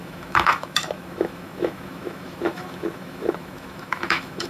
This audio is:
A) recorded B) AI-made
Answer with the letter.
B